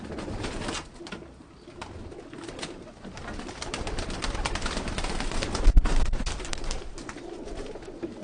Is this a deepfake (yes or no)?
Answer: no